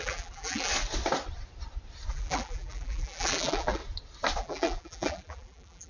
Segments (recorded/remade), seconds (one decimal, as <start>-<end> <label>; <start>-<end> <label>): 0.0-0.7 remade; 0.7-2.1 recorded; 2.1-3.8 remade; 3.8-4.4 recorded; 4.4-5.9 remade